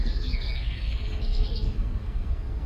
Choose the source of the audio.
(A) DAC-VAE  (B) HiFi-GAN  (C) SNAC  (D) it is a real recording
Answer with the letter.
C